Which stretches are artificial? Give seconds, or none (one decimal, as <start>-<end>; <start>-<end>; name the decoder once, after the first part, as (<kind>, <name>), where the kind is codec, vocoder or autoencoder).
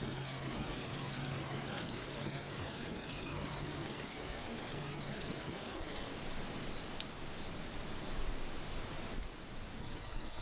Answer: 0.0-6.1 (codec, SNAC); 9.8-10.4